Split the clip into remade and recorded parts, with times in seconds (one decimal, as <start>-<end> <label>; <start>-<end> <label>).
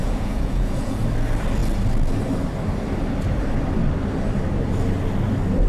0.0-1.0 remade; 1.0-5.7 recorded